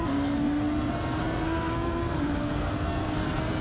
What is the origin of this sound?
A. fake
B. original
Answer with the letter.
A